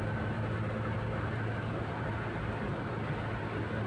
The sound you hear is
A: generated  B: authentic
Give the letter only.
B